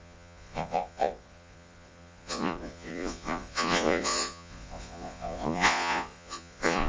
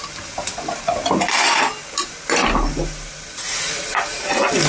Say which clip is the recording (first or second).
second